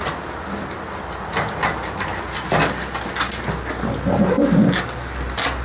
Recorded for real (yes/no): yes